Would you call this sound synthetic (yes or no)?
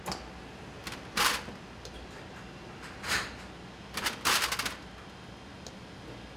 no